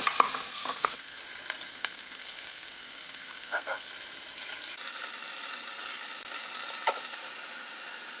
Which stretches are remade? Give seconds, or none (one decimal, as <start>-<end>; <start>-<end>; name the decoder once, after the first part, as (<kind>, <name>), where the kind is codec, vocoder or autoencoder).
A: 0.5-1.2 (codec, SNAC); 1.7-3.9